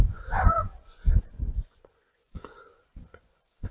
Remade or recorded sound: remade